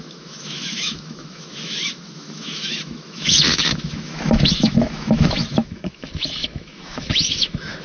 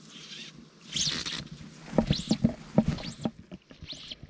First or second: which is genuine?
second